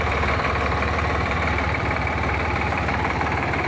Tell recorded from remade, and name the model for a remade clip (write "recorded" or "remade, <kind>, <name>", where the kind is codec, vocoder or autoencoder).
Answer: remade, vocoder, BigVGAN v2